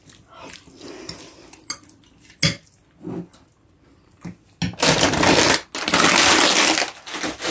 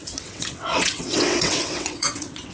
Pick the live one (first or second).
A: first